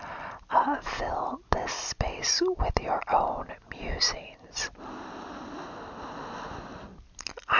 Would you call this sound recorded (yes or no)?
yes